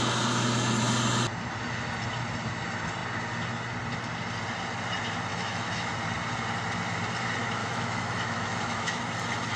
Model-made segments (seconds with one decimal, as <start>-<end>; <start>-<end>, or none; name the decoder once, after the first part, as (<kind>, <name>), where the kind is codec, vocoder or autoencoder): 5.3-5.9 (autoencoder, DAC-VAE); 7.6-9.0